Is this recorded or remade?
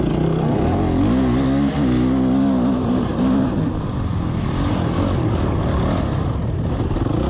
recorded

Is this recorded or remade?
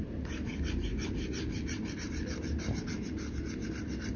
recorded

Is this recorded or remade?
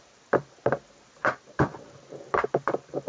remade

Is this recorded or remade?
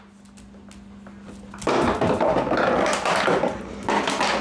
recorded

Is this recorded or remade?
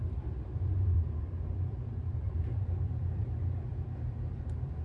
remade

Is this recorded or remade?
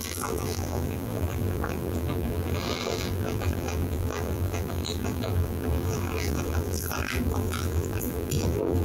remade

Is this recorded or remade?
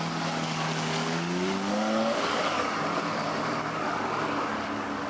remade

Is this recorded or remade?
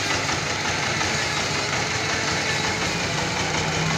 recorded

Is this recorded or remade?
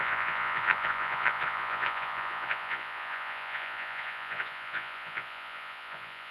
remade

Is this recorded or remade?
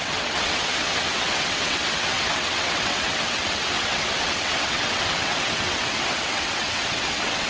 remade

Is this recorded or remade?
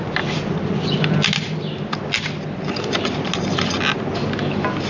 recorded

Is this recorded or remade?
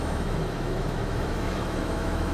remade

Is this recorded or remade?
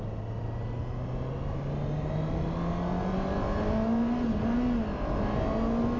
recorded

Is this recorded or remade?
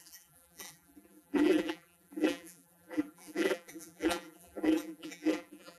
remade